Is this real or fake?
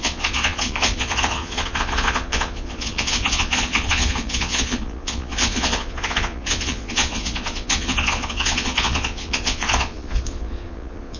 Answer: fake